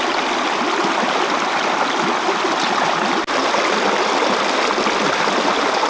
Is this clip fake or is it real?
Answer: real